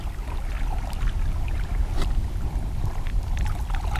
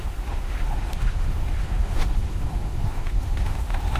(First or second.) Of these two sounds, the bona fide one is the first